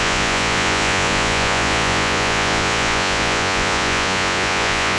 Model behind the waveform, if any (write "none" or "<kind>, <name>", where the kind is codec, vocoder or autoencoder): vocoder, Vocos